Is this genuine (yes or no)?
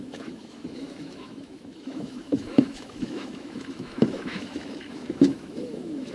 no